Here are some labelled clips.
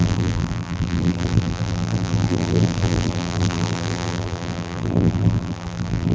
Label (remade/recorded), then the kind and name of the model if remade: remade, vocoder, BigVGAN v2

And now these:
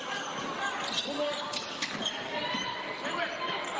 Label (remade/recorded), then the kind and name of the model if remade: recorded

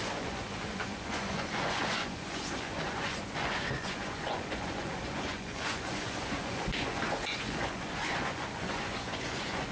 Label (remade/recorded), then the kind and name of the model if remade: remade, vocoder, Vocos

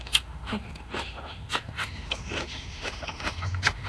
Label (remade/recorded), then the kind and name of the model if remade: remade, autoencoder, DAC-VAE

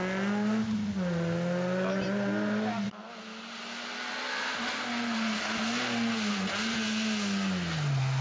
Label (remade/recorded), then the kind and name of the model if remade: recorded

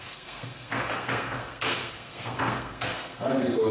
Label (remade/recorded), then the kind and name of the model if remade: remade, codec, SNAC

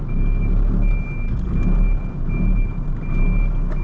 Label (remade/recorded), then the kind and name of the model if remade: recorded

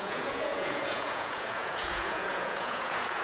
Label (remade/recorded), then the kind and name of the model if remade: remade, vocoder, Vocos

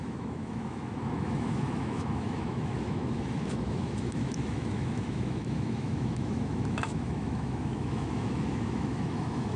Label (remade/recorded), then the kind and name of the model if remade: remade, autoencoder, DAC-VAE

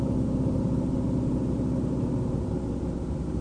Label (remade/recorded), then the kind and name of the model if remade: recorded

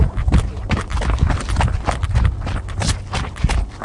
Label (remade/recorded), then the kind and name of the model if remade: recorded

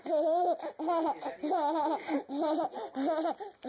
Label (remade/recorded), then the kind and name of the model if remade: recorded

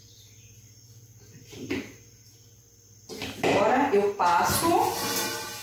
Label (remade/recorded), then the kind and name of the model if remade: recorded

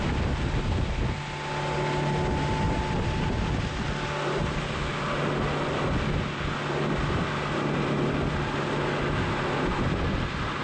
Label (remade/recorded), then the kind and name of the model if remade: recorded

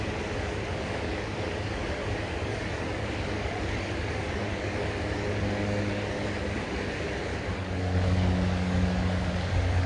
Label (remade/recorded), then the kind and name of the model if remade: remade, codec, DAC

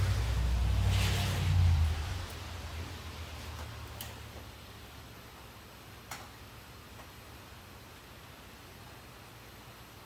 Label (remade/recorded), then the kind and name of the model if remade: recorded